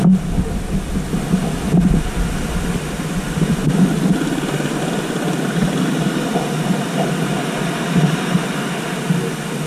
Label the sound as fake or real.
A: real